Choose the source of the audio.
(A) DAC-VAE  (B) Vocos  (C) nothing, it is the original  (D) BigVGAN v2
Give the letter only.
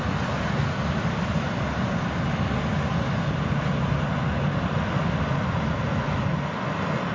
C